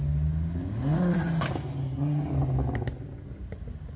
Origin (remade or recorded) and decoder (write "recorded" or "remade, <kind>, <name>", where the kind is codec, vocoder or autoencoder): recorded